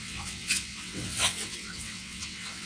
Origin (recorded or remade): remade